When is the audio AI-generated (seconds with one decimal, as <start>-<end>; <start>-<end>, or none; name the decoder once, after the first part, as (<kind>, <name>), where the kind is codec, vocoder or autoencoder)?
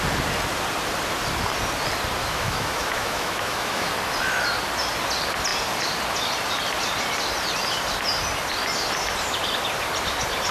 2.2-3.9 (autoencoder, DAC-VAE)